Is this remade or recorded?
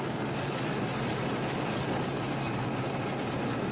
recorded